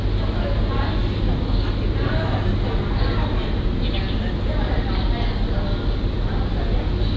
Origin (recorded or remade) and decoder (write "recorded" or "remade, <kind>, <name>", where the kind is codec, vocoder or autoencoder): recorded